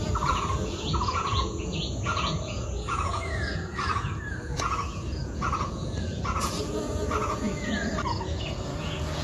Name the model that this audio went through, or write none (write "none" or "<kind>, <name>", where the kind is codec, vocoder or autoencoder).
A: vocoder, Vocos